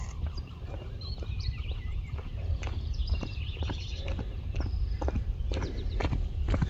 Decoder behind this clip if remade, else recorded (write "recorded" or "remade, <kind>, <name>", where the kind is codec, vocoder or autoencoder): remade, vocoder, BigVGAN v2